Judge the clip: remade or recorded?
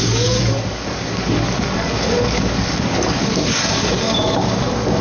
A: remade